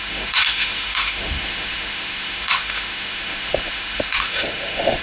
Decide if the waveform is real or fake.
fake